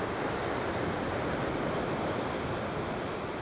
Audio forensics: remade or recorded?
recorded